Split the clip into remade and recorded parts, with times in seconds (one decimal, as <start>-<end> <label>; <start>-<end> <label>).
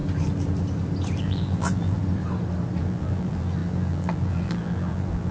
0.0-1.2 recorded; 1.2-2.0 remade; 2.0-2.8 recorded; 2.8-5.3 remade